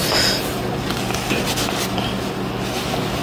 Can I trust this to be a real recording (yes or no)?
yes